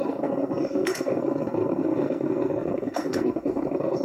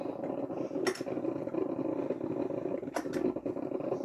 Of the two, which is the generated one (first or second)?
first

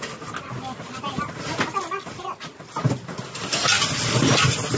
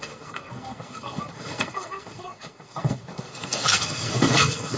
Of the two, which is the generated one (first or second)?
second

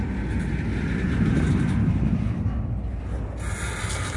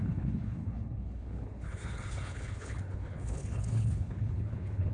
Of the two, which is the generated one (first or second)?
second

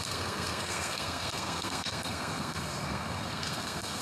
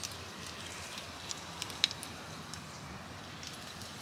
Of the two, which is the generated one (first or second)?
first